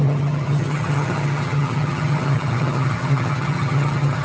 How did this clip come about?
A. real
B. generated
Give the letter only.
B